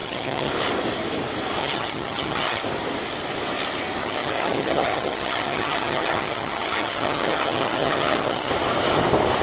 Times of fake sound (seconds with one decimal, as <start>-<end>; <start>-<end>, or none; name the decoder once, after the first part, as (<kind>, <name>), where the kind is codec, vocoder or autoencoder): 0.0-0.5 (vocoder, HiFi-GAN); 1.6-2.6; 4.0-8.5